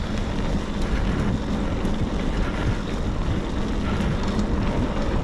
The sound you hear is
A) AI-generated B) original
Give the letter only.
B